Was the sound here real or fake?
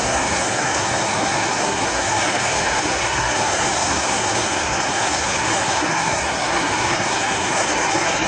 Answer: fake